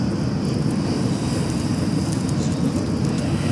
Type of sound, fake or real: real